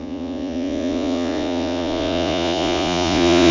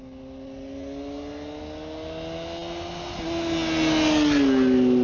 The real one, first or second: second